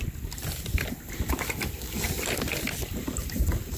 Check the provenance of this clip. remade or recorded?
recorded